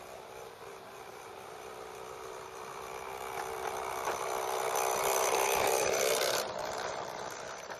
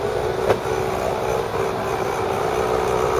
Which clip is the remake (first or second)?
first